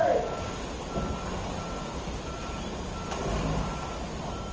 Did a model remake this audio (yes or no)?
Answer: no